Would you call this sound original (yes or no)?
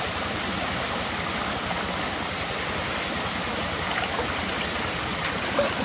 yes